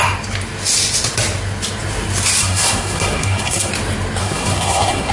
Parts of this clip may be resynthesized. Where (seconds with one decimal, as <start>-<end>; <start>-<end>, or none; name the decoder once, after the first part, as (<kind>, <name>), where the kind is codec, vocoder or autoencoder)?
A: 2.4-3.7 (codec, SNAC); 4.2-5.1